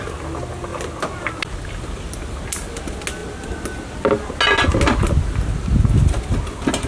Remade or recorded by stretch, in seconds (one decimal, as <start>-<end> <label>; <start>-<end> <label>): 0.0-6.9 recorded